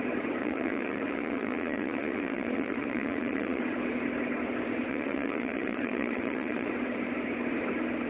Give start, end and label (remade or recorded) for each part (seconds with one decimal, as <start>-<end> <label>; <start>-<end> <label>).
0.0-0.4 recorded; 0.4-3.6 remade; 3.6-4.9 recorded; 4.9-6.7 remade; 6.7-8.1 recorded